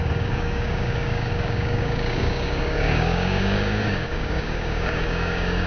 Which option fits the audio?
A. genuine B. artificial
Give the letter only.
B